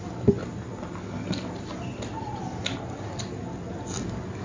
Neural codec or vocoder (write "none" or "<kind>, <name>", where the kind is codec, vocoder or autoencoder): none